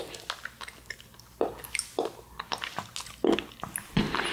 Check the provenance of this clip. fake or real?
real